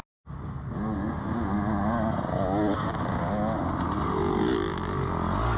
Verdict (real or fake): real